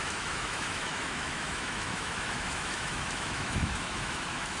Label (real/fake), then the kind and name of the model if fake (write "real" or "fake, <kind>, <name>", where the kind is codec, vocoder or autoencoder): fake, autoencoder, DAC-VAE